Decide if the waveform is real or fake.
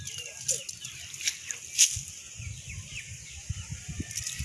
real